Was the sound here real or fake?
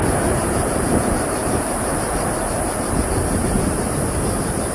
fake